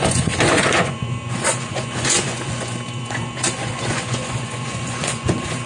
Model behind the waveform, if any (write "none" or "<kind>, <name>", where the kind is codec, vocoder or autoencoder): vocoder, Vocos